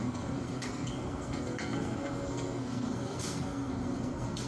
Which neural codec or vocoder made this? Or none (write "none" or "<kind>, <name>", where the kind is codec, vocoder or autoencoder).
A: codec, SNAC